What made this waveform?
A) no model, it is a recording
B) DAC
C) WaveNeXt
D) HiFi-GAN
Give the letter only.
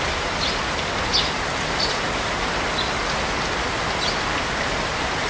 A